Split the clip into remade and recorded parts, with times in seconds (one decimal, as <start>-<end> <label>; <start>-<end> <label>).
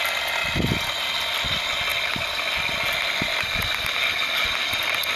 0.0-5.2 recorded